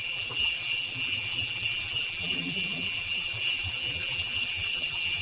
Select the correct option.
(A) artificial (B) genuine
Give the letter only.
A